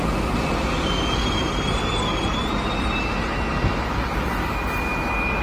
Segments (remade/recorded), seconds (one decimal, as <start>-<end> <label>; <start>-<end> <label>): 0.0-5.4 recorded